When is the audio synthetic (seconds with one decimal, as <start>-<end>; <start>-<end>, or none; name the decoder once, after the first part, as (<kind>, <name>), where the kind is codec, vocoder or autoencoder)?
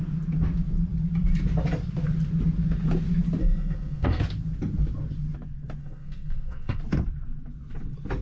3.4-4.2 (codec, SNAC); 5.8-6.8